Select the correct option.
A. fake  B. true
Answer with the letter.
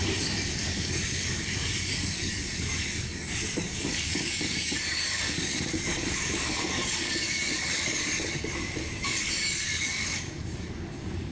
A